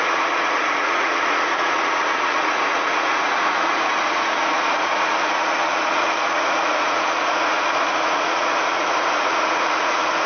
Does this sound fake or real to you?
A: fake